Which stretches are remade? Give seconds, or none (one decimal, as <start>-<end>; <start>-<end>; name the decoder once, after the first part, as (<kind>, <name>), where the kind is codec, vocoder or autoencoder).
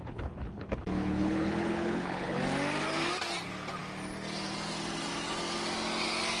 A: 0.0-2.4 (codec, HILCodec)